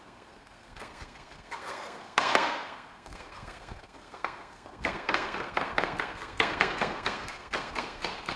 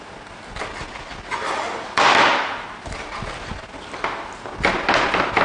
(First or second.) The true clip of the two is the second